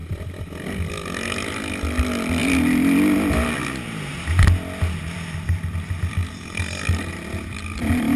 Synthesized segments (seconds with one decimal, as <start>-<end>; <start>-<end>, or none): 0.0-0.9; 2.4-6.6